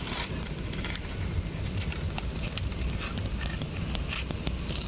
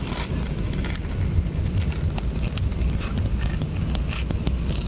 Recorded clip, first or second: second